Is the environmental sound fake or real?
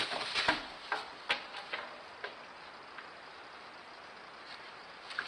real